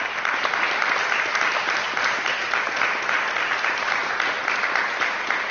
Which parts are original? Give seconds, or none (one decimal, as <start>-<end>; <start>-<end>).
0.0-5.5